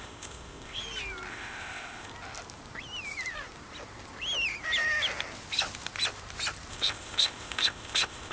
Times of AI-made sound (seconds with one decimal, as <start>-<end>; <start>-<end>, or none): 0.0-0.8; 1.3-2.1; 6.7-8.3